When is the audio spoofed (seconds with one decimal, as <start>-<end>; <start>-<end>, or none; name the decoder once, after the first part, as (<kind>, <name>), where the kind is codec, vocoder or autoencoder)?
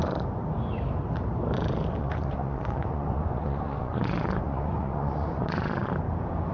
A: 2.0-5.9 (vocoder, Vocos)